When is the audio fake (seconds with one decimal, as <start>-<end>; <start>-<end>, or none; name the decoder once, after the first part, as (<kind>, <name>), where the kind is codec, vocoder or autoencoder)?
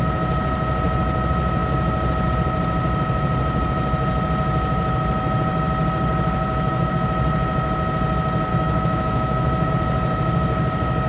6.4-6.9 (autoencoder, DAC-VAE); 8.5-9.7